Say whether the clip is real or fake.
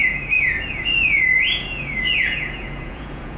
fake